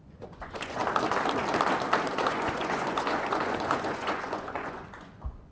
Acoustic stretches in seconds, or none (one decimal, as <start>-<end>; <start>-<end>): 0.8-2.1

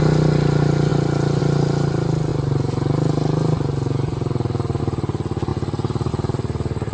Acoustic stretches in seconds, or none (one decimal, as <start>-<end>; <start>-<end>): 0.0-6.9